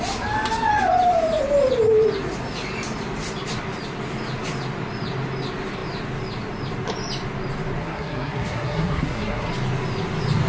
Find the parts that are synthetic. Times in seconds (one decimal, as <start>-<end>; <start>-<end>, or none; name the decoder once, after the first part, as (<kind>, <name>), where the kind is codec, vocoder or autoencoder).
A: 7.8-9.5 (codec, SNAC)